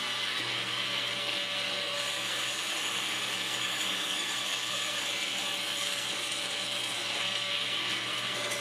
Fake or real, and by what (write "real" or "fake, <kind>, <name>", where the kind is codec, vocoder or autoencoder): fake, codec, SNAC